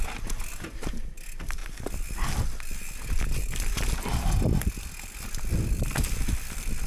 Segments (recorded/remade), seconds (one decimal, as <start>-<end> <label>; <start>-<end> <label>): 0.0-6.9 recorded